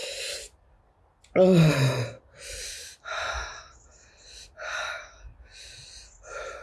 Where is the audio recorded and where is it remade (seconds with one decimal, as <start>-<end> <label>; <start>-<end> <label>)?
0.0-6.6 recorded